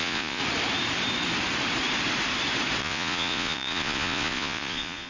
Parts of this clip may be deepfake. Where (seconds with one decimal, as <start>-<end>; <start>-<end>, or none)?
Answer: 0.0-0.4; 2.8-5.1